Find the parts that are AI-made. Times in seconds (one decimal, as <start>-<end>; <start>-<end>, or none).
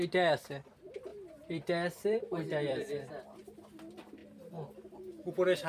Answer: 1.1-3.4; 4.2-5.1